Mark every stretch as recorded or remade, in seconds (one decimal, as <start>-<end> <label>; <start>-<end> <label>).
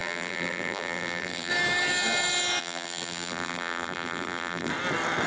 0.0-1.5 remade; 1.5-2.6 recorded; 2.6-4.7 remade; 4.7-5.3 recorded